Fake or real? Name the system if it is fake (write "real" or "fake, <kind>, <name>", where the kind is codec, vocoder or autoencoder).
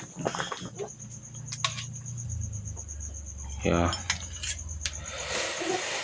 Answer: real